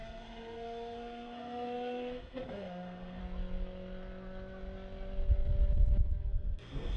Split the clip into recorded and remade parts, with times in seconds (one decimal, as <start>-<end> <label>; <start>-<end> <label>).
0.0-3.2 remade; 3.2-6.2 recorded; 6.2-7.0 remade